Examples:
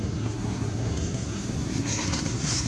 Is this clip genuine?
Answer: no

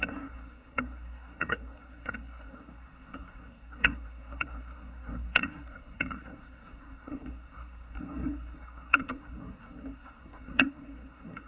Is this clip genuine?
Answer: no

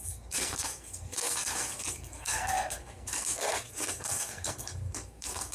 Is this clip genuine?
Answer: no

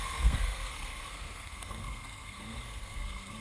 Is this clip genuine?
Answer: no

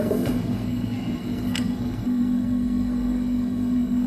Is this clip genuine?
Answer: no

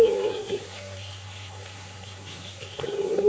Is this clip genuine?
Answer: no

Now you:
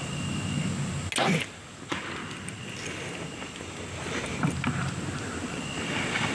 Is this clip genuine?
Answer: yes